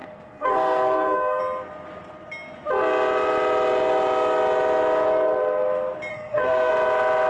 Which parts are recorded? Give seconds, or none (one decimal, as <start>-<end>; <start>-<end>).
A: 1.4-6.1; 6.7-7.3